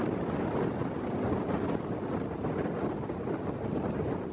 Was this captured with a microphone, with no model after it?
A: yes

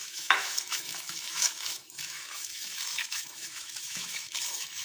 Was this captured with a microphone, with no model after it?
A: no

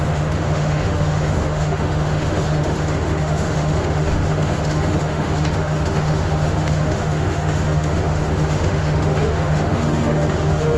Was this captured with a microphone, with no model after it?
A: no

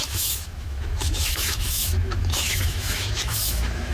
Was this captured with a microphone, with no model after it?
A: no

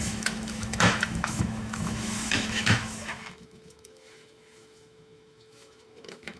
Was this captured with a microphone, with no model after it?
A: no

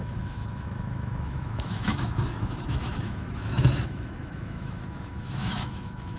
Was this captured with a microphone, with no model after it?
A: no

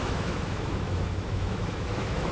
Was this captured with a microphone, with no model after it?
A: no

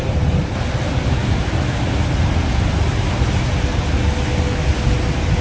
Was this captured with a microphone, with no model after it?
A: yes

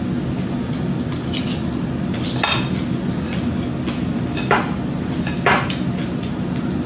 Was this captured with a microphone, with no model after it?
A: yes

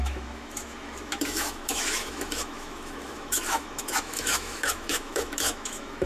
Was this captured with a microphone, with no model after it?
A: no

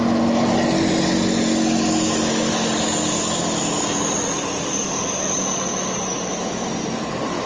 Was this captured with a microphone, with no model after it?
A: yes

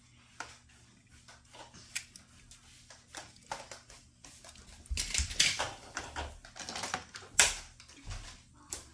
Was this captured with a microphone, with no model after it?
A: yes